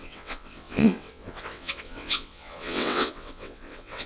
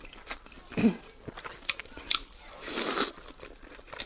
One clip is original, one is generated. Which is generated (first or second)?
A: first